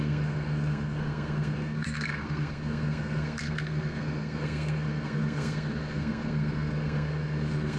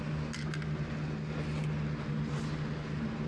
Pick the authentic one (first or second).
second